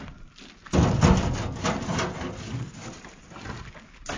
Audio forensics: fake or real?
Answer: real